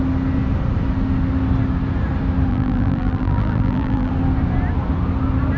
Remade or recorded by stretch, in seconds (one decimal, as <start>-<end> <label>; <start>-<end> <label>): 0.0-2.5 recorded; 2.5-4.1 remade; 4.1-5.6 recorded